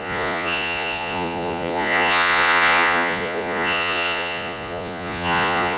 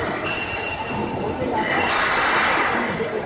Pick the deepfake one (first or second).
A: first